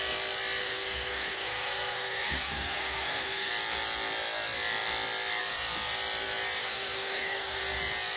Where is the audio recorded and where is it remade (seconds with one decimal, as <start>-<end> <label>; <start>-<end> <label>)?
0.0-0.6 recorded; 0.6-3.5 remade; 3.5-6.6 recorded; 6.6-7.6 remade; 7.6-8.2 recorded